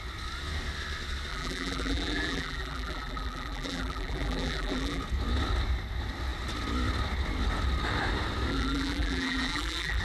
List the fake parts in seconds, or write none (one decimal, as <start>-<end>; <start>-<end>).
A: 1.3-5.0; 8.5-10.0